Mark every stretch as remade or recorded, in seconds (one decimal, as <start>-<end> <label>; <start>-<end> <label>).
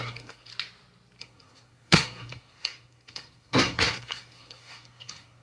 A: 0.0-0.5 remade; 0.5-1.2 recorded; 1.2-5.4 remade